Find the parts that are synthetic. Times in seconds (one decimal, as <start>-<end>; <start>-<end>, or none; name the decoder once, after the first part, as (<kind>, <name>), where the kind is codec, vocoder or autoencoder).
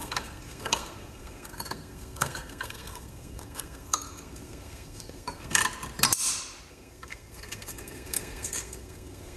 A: 0.0-5.6 (codec, SNAC); 6.7-9.4